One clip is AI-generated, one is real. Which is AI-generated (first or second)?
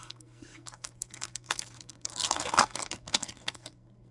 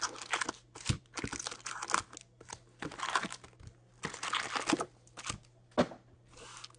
first